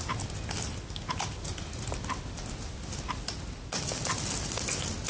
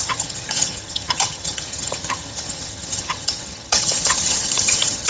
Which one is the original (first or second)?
first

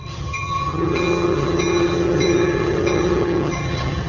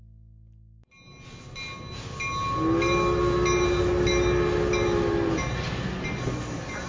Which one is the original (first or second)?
second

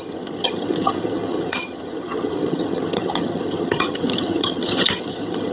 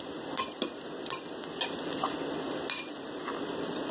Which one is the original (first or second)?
second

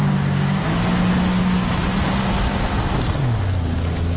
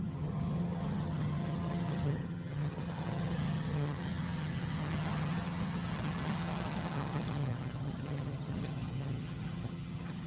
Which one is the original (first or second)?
first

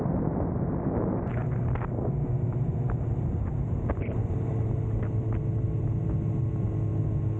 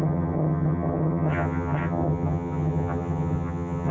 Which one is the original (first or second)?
first